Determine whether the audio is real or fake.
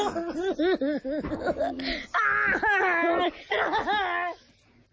real